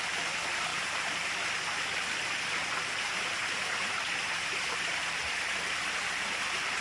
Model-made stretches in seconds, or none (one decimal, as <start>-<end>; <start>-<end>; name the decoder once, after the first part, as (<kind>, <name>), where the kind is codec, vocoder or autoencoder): none